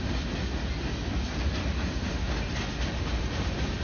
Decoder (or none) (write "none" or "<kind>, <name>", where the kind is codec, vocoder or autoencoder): none